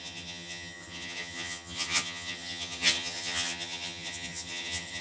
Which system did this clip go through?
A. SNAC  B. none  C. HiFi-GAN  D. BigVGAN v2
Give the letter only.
C